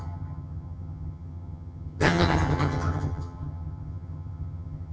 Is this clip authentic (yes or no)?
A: no